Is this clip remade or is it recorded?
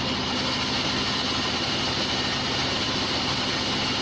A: recorded